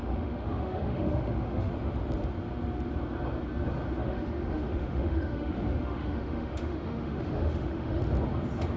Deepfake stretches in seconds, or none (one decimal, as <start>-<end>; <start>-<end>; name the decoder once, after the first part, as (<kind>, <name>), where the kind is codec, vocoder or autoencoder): 0.0-1.7 (autoencoder, DAC-VAE); 4.0-8.0